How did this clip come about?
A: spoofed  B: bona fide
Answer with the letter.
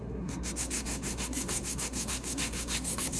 A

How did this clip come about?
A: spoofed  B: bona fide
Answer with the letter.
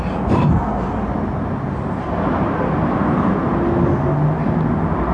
B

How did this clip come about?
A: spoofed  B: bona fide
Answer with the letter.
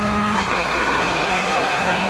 A